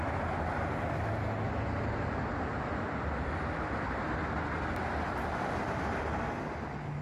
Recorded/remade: recorded